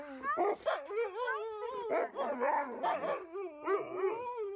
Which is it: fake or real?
real